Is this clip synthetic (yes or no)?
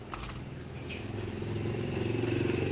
no